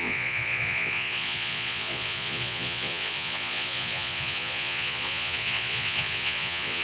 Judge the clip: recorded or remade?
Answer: remade